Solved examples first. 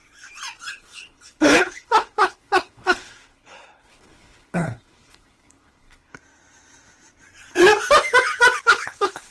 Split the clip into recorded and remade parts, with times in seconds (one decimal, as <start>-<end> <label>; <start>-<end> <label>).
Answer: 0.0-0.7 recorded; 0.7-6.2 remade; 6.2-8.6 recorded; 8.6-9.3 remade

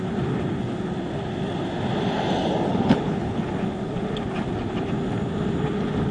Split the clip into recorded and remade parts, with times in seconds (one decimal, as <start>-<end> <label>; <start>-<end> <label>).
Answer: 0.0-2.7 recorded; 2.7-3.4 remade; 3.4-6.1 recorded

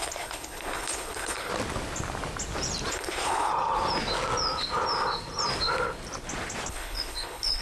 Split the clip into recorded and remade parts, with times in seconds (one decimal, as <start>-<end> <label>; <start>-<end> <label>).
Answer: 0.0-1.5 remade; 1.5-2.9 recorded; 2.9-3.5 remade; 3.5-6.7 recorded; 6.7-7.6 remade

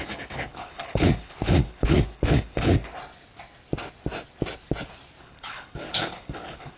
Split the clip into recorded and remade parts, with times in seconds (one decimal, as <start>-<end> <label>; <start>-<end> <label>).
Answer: 0.0-2.9 remade; 2.9-5.2 recorded; 5.2-6.8 remade

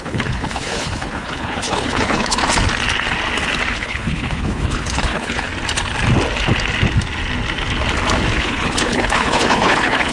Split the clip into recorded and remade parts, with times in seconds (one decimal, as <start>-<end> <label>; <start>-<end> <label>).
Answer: 0.0-2.4 remade; 2.4-3.7 recorded; 3.7-5.5 remade; 5.5-8.4 recorded; 8.4-10.1 remade

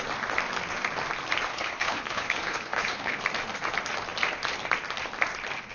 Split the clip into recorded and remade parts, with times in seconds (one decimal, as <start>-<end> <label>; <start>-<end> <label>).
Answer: 0.0-1.5 recorded; 1.5-3.2 remade; 3.2-5.7 recorded

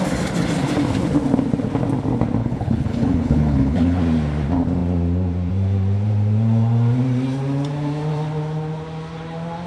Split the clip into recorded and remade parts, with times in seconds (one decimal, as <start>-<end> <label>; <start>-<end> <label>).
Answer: 0.0-2.4 recorded; 2.4-4.0 remade; 4.0-9.7 recorded